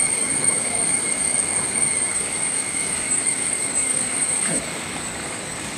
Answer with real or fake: fake